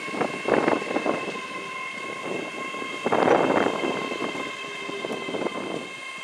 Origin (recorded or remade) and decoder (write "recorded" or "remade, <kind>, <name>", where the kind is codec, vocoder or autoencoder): recorded